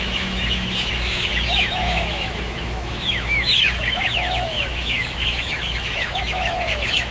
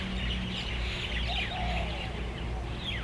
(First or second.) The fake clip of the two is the first